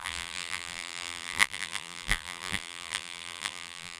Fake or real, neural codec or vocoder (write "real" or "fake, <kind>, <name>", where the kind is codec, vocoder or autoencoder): fake, vocoder, BigVGAN v2